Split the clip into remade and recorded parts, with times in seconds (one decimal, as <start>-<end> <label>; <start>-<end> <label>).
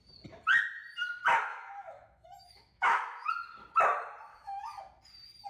0.0-1.5 recorded; 1.5-3.3 remade; 3.3-4.3 recorded; 4.3-4.8 remade; 4.8-5.5 recorded